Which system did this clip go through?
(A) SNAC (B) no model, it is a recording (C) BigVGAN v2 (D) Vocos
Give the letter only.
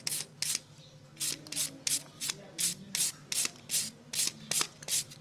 B